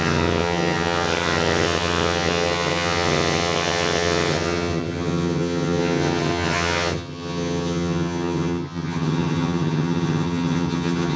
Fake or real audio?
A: fake